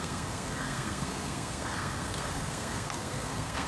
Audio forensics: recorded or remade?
remade